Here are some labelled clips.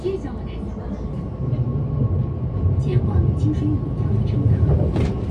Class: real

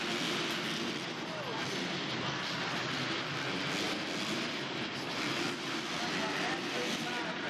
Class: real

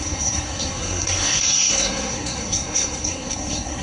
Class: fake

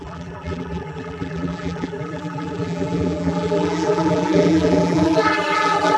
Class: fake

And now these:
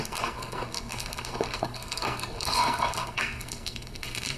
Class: fake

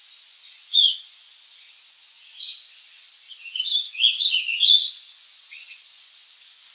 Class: fake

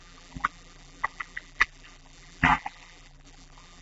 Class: fake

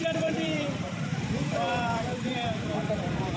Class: fake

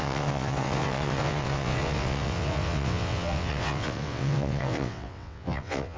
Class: fake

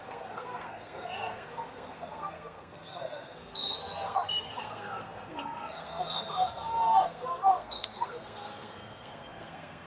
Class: fake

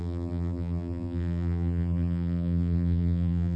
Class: fake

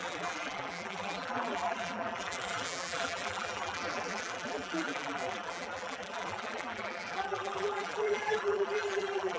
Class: fake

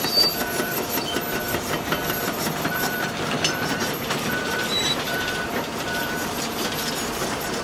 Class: fake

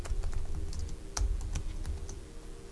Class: real